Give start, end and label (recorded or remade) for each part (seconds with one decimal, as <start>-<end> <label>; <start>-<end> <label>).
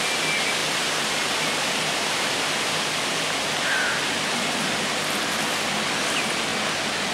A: 0.0-7.1 recorded